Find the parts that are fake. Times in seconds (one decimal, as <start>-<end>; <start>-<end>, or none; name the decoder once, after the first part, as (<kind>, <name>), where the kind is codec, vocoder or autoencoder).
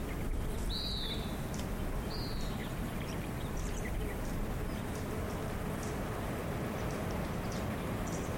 2.6-4.6 (vocoder, BigVGAN v2); 6.4-8.4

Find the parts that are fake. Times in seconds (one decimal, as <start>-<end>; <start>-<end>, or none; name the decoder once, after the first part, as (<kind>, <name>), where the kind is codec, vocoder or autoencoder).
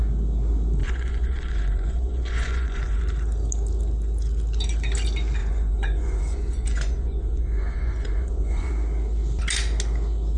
0.8-3.0 (vocoder, Vocos); 5.4-8.7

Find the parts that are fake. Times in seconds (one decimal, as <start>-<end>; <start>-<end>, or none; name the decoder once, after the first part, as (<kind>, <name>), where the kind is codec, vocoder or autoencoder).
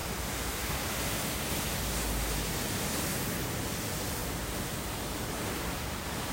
4.2-6.3 (vocoder, BigVGAN v2)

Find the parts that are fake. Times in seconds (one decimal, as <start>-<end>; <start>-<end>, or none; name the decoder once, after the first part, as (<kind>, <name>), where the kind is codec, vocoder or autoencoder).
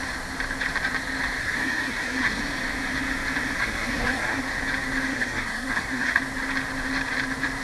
1.4-2.4 (codec, SNAC); 3.6-4.4; 5.1-6.2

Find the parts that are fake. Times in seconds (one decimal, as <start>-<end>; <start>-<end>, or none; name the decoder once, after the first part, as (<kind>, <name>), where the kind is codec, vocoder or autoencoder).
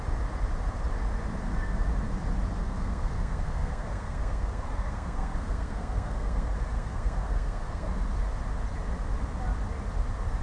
2.6-7.9 (codec, SNAC)